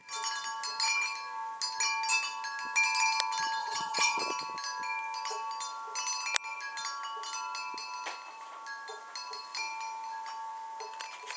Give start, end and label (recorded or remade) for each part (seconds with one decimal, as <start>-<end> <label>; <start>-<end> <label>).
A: 0.0-3.6 recorded; 3.6-4.2 remade; 4.2-11.4 recorded